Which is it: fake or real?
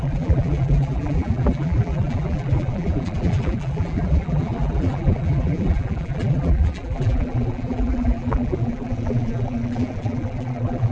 fake